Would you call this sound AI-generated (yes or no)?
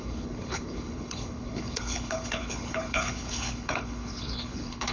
yes